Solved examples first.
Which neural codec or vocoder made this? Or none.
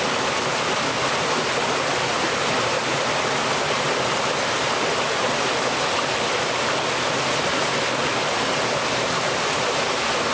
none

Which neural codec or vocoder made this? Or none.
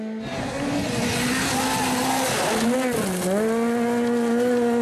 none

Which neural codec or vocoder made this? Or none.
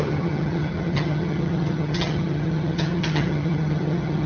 vocoder, HiFi-GAN